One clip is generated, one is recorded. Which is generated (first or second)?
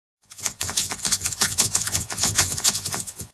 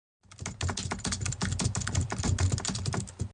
first